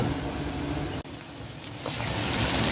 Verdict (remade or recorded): recorded